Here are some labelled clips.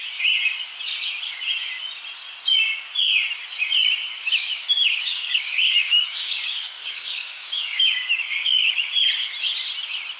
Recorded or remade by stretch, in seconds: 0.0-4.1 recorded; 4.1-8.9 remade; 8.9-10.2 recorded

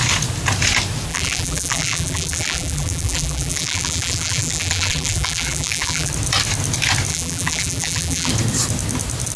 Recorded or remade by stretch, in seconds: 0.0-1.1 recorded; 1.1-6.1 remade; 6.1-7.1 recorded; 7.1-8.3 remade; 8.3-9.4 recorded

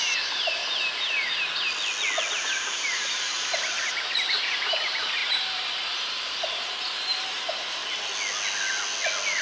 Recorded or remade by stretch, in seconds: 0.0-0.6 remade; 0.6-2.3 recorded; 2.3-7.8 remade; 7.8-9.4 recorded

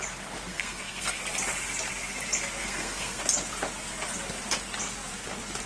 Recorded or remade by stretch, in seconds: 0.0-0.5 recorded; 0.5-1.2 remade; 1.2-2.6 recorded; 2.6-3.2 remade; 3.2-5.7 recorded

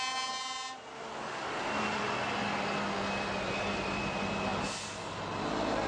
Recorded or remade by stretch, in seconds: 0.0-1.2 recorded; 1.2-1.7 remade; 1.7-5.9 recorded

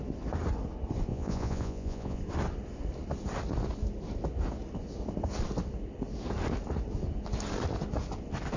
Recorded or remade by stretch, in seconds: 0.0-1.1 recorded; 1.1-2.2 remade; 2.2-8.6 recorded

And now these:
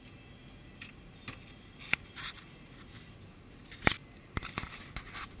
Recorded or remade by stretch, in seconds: 0.0-5.4 recorded